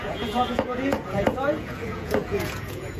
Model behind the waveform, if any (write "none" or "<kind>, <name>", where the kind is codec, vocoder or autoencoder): vocoder, Vocos